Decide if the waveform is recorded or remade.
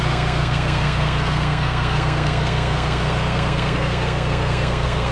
remade